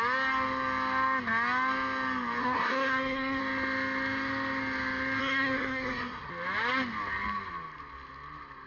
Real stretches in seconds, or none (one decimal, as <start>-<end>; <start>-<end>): 0.0-2.4; 3.4-5.2; 6.3-8.7